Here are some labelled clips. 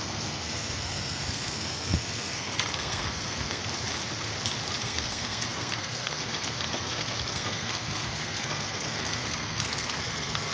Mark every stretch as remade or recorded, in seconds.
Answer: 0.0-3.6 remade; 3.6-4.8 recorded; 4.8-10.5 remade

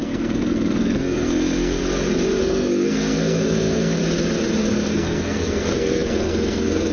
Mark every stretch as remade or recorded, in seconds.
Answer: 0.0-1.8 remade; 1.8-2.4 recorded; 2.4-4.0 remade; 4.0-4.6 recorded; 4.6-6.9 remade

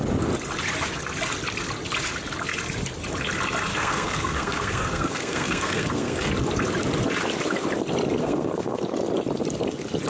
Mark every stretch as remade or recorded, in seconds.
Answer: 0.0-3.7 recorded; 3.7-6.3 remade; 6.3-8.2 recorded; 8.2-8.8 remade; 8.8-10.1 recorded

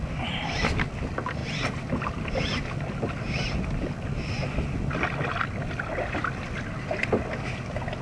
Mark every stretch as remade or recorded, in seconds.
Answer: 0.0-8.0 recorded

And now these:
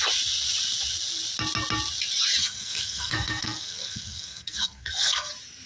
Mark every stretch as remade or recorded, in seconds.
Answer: 0.0-2.4 recorded; 2.4-5.3 remade; 5.3-5.7 recorded

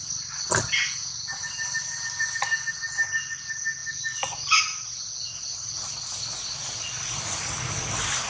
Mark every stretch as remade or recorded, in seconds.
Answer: 0.0-8.3 recorded

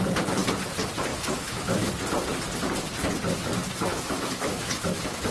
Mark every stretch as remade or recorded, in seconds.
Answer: 0.0-1.1 recorded; 1.1-1.9 remade; 1.9-3.9 recorded; 3.9-5.3 remade

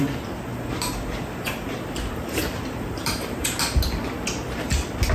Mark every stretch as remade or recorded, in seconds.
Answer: 0.0-0.5 recorded; 0.5-3.6 remade; 3.6-5.1 recorded